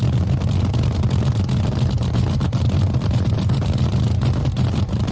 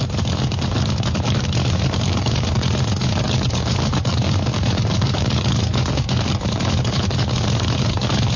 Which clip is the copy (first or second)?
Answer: second